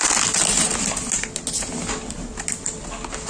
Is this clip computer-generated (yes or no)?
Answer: no